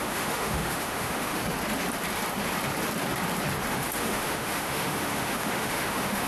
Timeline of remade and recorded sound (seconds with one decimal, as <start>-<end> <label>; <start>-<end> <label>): 0.0-1.4 remade; 1.4-3.7 recorded; 3.7-6.3 remade